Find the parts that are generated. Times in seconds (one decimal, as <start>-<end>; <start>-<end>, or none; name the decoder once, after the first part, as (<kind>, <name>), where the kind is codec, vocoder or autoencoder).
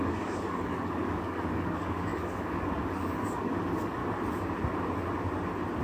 0.0-4.0 (codec, DAC)